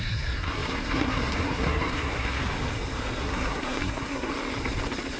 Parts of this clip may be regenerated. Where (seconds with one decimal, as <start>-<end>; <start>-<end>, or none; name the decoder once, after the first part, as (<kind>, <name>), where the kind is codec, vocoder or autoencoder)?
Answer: 0.0-2.4 (codec, SNAC); 3.2-4.3